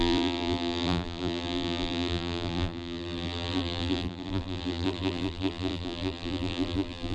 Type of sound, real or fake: fake